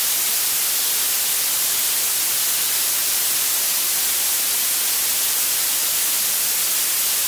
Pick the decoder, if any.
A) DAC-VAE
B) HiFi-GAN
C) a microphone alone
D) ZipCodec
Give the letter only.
C